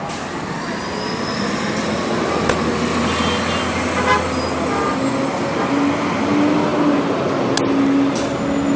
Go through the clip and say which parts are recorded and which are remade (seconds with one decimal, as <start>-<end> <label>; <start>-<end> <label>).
0.0-8.8 recorded